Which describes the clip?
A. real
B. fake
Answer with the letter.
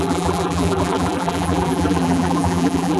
B